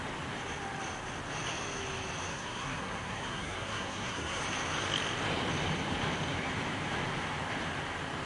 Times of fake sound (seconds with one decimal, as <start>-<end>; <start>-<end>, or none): 2.3-4.4